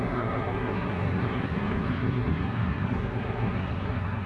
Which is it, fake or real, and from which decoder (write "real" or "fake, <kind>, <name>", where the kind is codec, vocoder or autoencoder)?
fake, codec, SNAC